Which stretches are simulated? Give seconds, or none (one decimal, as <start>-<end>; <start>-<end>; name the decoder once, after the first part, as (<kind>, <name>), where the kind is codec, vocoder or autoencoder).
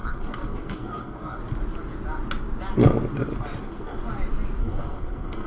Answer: 0.0-1.4 (codec, SNAC); 3.6-4.0; 4.6-5.5